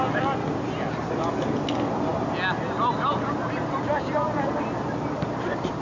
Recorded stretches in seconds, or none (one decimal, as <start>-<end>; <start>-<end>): 0.0-5.8